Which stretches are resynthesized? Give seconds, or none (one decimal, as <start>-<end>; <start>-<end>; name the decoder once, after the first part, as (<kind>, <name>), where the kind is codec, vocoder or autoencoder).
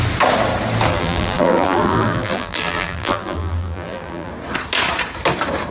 0.9-4.3 (vocoder, BigVGAN v2)